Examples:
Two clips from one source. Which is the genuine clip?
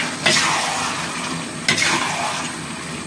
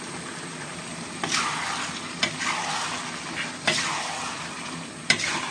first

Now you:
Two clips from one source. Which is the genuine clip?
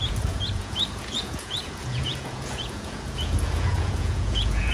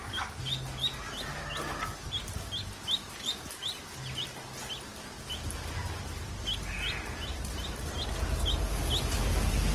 second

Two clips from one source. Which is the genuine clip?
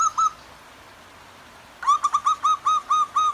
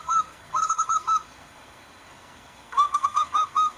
first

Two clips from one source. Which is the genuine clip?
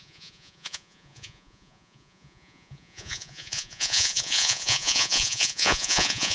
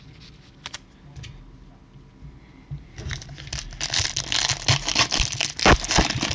second